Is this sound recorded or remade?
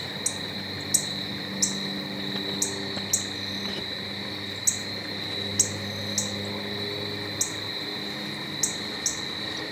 recorded